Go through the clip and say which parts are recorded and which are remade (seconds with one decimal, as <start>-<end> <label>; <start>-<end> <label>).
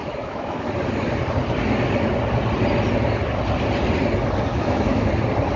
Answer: 0.0-0.7 remade; 0.7-4.5 recorded; 4.5-5.1 remade; 5.1-5.6 recorded